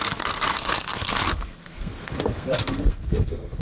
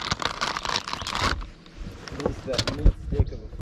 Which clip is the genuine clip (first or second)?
second